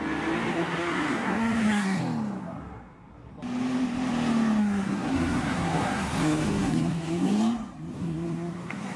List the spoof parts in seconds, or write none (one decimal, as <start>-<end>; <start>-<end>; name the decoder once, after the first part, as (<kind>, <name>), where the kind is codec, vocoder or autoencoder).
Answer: 0.5-2.0 (codec, SNAC); 2.4-3.3; 4.6-7.4; 7.9-9.0